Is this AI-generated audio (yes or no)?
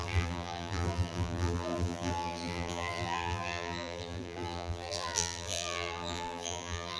yes